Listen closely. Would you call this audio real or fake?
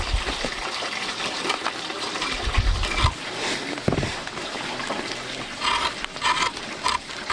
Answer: real